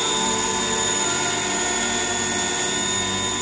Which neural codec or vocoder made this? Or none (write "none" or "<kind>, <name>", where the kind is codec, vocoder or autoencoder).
none